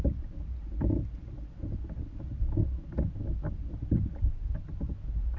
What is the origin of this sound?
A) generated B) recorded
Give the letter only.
B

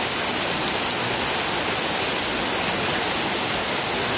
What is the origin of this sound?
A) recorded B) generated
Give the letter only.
A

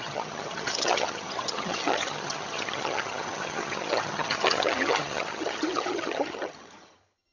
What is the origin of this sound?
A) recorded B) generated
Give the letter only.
B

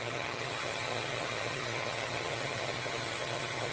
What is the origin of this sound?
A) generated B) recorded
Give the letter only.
A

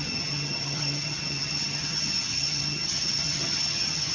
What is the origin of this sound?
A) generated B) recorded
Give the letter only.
A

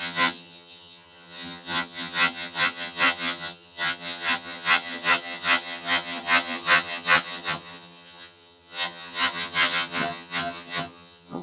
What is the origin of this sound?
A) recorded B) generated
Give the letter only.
B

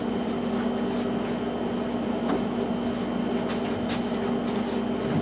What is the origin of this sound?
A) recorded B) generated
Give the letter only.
A